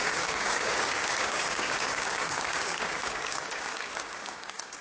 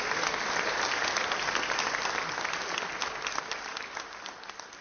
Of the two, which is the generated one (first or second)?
first